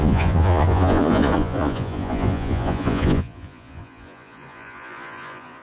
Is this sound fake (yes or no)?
yes